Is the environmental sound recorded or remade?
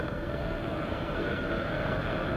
remade